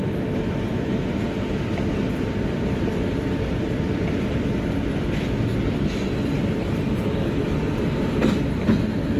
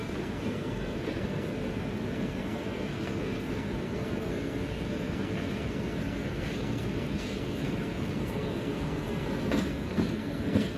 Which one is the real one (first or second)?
first